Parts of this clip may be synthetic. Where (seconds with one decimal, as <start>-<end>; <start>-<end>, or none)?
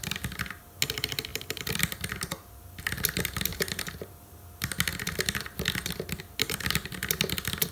1.3-2.1; 3.5-4.1